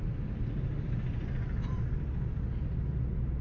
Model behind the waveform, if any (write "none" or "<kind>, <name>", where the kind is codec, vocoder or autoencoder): none